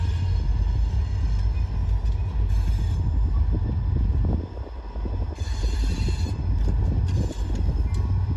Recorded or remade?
recorded